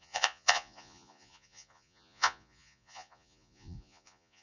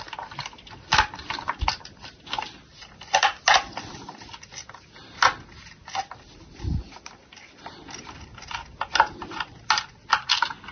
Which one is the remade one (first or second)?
first